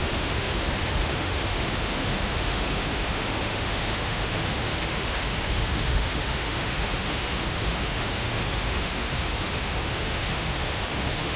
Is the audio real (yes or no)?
no